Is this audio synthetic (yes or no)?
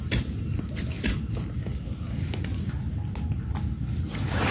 no